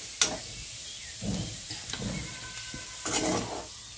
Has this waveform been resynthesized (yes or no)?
no